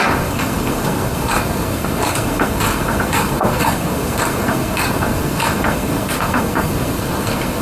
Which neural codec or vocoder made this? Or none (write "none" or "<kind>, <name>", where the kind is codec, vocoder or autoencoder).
codec, SNAC